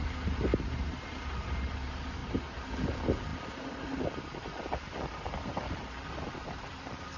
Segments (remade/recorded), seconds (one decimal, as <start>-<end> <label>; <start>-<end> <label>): 0.0-0.5 remade; 0.5-1.3 recorded; 1.3-2.2 remade; 2.2-2.9 recorded; 2.9-7.2 remade